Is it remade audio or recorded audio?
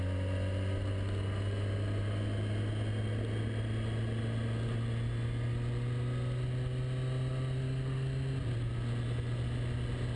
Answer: recorded